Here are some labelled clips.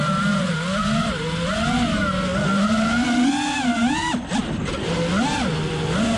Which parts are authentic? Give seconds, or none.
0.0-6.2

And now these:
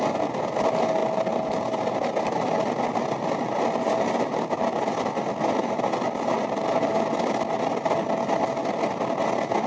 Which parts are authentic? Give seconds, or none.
0.0-9.7

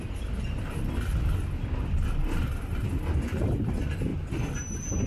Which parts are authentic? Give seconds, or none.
0.0-5.1

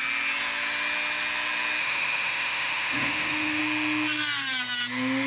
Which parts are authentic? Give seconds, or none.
0.0-1.8; 3.6-5.3

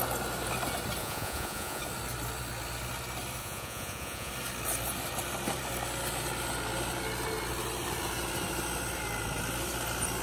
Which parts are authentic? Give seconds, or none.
0.0-1.0; 1.8-3.4; 4.3-10.2

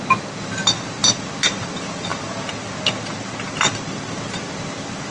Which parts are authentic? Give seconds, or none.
0.0-5.1